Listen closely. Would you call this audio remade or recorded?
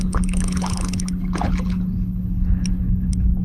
remade